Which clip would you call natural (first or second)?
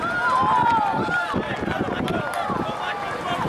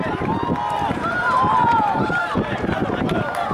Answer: first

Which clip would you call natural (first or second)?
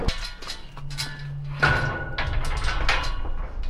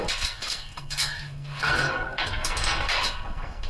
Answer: first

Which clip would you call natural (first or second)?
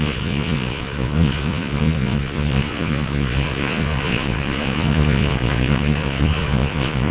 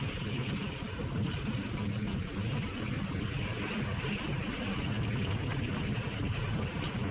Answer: second